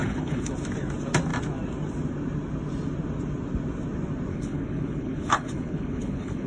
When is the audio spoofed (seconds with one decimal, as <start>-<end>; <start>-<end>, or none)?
0.0-0.5; 4.3-6.5